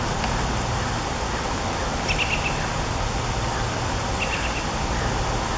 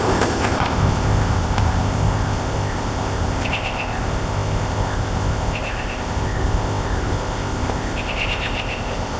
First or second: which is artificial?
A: second